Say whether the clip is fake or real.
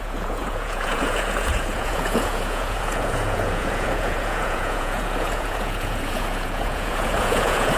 fake